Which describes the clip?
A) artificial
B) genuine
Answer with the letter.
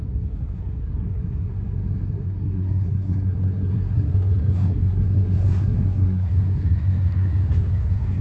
A